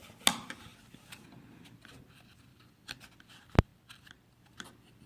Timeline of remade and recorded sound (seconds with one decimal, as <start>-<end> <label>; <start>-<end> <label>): 0.0-2.5 recorded; 2.5-3.0 remade; 3.0-5.1 recorded